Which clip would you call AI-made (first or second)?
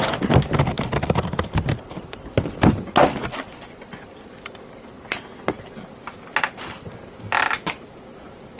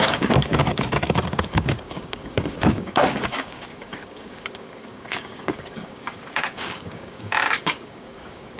second